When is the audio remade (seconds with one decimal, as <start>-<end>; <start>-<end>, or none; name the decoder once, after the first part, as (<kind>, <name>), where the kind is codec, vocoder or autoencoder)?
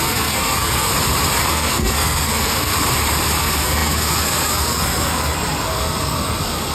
0.0-0.9 (codec, SNAC); 1.5-2.7; 3.4-6.7